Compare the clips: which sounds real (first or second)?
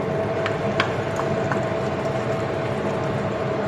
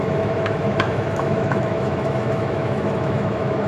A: first